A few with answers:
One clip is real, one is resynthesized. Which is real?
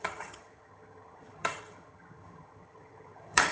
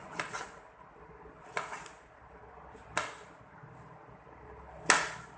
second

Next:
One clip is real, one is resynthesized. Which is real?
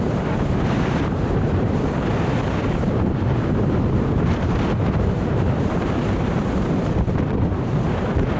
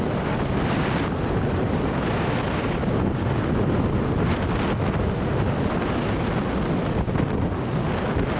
second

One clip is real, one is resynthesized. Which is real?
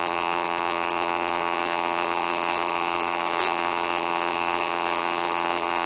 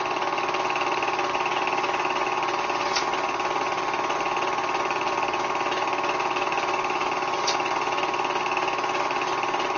second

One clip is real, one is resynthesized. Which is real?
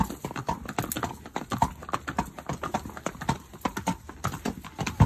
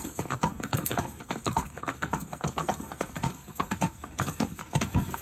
first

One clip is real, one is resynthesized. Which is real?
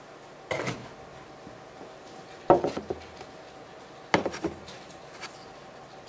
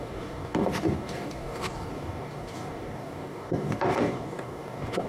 first